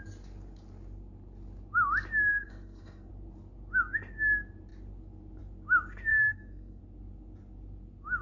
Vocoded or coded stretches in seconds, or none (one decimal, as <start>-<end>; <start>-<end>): 2.3-3.1; 6.1-6.8